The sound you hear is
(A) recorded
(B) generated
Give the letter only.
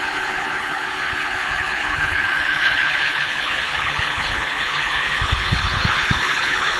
B